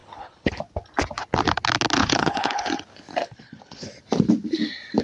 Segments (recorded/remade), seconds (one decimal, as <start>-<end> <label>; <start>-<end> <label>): 0.0-0.6 remade; 0.6-2.0 recorded; 2.0-2.7 remade; 2.7-3.2 recorded; 3.2-3.9 remade; 3.9-5.0 recorded